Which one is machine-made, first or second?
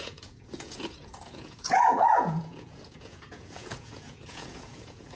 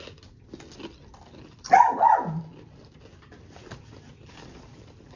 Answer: first